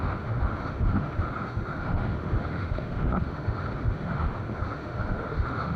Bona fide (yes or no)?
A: no